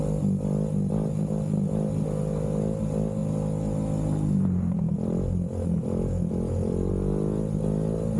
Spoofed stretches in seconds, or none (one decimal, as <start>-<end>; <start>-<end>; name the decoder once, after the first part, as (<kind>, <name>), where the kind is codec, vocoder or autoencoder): none